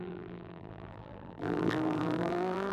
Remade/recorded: remade